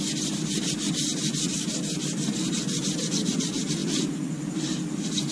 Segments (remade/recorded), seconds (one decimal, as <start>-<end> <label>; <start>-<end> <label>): 0.0-5.3 recorded